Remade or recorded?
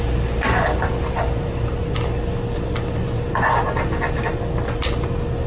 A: recorded